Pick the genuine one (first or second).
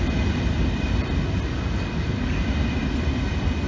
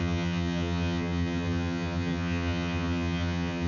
first